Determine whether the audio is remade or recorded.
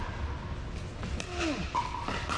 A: recorded